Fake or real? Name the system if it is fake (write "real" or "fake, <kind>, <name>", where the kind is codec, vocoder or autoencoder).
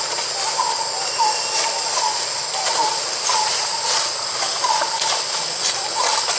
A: real